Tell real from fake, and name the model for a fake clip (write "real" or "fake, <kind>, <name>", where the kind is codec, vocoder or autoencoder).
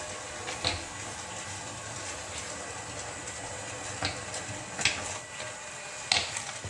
real